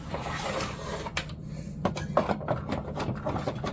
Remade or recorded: recorded